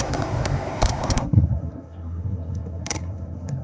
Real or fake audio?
fake